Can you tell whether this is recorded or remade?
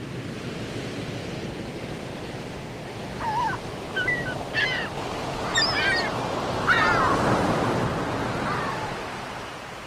recorded